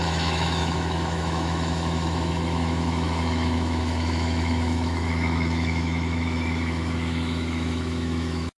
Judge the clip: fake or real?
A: fake